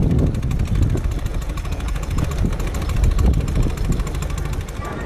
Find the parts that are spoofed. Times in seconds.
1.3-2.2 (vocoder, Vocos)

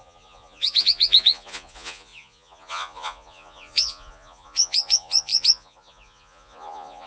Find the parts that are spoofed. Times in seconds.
0.0-7.1 (vocoder, Vocos)